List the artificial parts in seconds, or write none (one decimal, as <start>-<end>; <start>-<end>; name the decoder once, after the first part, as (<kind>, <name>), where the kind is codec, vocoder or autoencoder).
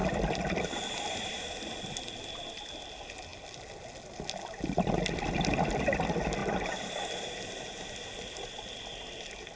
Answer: 0.0-0.6 (vocoder, BigVGAN v2); 6.4-7.4